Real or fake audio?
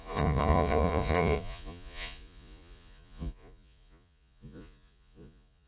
fake